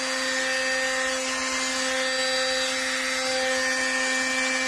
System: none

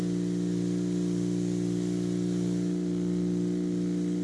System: none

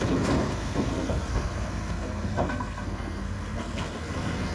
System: codec, SNAC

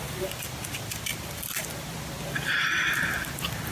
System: none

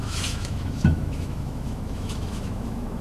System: autoencoder, DAC-VAE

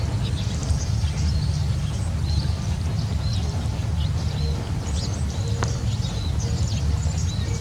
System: none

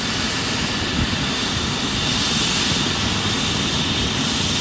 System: none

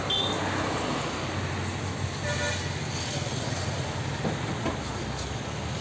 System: none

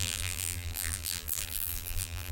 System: vocoder, BigVGAN v2